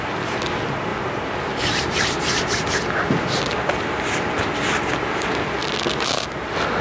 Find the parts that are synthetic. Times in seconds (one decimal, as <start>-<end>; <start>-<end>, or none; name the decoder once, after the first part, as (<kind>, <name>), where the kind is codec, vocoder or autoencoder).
0.9-2.5 (vocoder, BigVGAN v2)